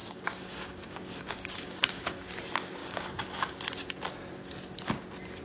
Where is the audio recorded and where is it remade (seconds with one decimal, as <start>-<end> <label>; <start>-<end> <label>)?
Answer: 0.0-2.3 remade; 2.3-2.8 recorded; 2.8-3.6 remade; 3.6-5.4 recorded